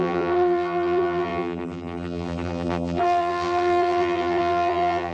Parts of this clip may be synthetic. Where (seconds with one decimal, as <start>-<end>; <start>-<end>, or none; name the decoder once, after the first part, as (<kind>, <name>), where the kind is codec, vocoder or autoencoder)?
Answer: 0.0-5.1 (vocoder, BigVGAN v2)